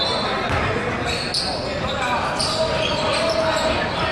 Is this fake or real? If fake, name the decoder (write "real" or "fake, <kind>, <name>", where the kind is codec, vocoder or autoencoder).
real